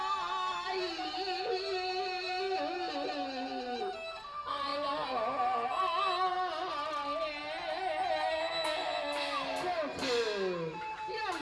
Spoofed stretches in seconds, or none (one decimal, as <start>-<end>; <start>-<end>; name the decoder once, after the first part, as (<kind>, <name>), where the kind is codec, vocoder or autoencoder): none